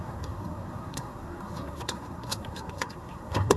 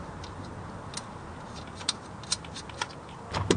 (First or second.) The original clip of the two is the second